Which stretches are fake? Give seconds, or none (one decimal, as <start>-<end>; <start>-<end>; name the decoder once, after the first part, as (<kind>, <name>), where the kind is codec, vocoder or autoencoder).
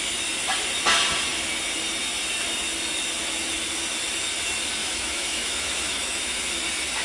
4.8-6.4 (autoencoder, DAC-VAE)